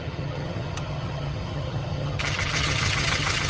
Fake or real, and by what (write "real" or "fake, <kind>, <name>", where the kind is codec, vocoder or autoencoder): fake, vocoder, HiFi-GAN